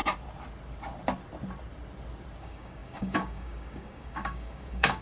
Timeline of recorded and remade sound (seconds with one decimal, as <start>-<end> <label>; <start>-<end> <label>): 0.0-2.4 recorded; 2.4-5.0 remade